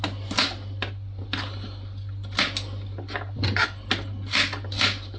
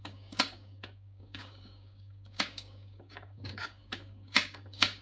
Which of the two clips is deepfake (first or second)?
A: second